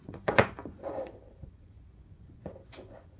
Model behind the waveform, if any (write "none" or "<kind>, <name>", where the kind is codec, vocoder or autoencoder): vocoder, Vocos